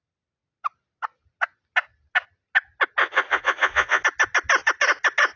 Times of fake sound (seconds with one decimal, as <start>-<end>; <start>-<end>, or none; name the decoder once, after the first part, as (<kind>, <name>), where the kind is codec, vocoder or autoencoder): 3.0-4.0 (vocoder, Vocos)